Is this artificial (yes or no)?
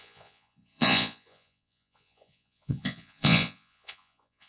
yes